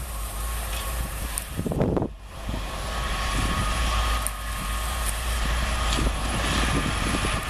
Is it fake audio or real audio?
fake